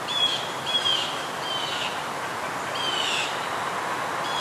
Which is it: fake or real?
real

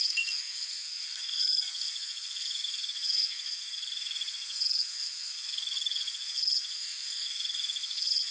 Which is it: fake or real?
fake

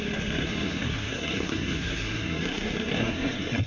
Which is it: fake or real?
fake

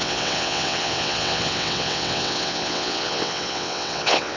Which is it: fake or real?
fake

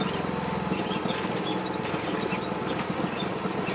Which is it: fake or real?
real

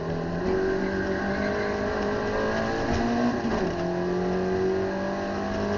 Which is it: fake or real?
real